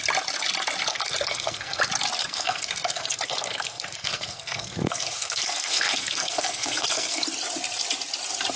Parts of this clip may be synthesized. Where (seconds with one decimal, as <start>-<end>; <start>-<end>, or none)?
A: 0.9-1.8; 2.2-7.2